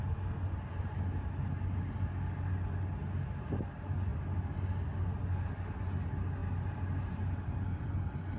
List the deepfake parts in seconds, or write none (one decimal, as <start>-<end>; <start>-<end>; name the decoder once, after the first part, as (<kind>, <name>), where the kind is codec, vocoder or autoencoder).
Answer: none